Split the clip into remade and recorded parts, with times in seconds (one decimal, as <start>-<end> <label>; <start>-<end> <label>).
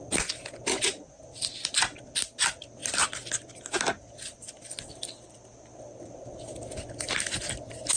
0.0-8.0 recorded